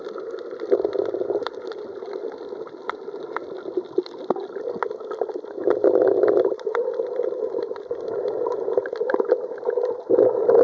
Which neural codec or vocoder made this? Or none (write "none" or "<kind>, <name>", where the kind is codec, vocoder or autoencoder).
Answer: none